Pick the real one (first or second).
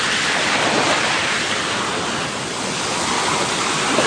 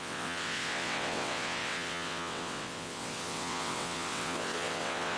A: first